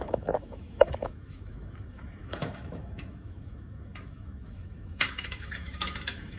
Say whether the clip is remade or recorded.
remade